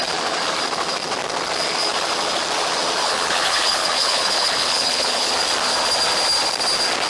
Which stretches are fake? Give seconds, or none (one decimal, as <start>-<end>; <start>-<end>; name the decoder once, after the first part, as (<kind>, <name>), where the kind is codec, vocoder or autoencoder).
3.0-5.3 (codec, HILCodec)